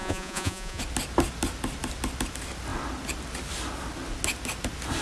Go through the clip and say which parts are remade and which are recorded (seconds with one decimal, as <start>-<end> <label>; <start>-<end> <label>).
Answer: 0.0-0.8 remade; 0.8-5.0 recorded